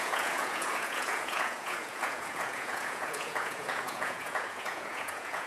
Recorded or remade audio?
remade